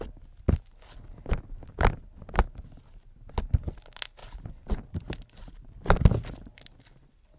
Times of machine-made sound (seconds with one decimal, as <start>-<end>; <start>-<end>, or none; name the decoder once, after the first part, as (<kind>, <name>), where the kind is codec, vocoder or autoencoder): none

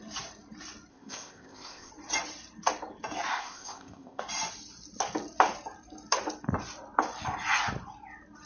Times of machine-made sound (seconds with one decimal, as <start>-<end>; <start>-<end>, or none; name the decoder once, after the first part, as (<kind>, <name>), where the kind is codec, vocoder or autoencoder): 0.9-1.9 (codec, ZipCodec); 3.3-4.2

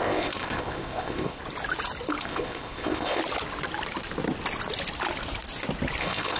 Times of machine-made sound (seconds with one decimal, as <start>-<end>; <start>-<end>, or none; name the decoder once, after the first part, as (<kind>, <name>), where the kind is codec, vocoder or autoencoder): 0.0-1.4 (codec, ZipCodec); 2.2-3.2; 6.0-6.4

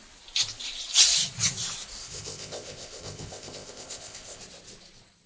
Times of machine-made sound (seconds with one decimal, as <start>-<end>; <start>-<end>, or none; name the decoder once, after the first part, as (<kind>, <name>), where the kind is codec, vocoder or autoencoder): 2.0-4.4 (codec, ZipCodec)

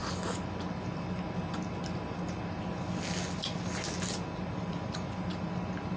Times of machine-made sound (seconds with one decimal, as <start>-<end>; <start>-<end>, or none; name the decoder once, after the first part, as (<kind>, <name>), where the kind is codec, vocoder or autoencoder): none

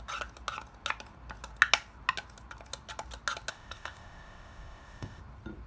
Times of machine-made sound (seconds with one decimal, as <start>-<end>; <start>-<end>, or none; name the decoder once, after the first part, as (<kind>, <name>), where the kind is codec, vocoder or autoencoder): 3.5-5.2 (codec, ZipCodec)

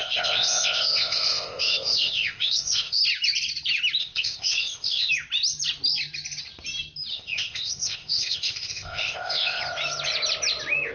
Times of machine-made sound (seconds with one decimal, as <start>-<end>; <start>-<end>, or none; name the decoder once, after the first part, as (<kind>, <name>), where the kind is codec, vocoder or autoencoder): 0.0-3.0 (codec, ZipCodec); 4.0-5.1; 7.1-9.6

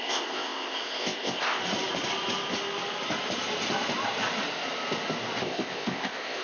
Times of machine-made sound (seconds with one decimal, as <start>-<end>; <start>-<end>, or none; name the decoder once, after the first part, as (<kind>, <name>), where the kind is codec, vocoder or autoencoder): 0.0-1.6 (codec, ZipCodec); 5.4-6.4